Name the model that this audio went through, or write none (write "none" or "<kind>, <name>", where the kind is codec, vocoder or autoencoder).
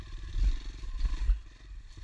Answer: none